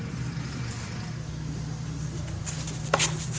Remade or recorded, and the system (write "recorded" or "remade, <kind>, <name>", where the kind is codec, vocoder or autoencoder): recorded